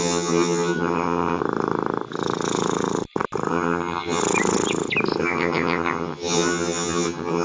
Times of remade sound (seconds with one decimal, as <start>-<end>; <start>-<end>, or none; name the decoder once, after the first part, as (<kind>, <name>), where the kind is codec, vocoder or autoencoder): 0.0-1.4 (vocoder, HiFi-GAN); 3.5-4.2; 5.2-7.4